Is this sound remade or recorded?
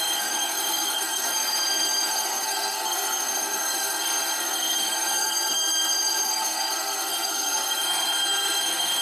remade